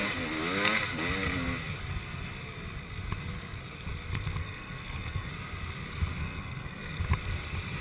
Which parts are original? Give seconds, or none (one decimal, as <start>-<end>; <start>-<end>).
0.0-4.4; 5.3-6.2; 7.0-7.8